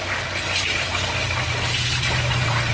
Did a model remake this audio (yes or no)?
no